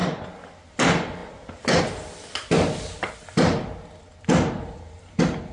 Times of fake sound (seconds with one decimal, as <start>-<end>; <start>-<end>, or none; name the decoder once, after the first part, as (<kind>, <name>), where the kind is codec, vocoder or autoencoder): none